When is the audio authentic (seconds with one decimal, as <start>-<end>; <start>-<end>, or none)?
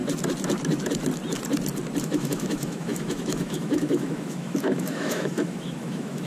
0.0-2.0